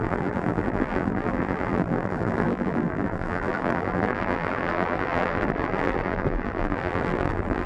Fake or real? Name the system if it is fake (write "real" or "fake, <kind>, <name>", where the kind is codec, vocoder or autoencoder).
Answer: fake, vocoder, BigVGAN v2